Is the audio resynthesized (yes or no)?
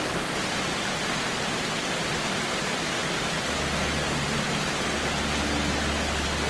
no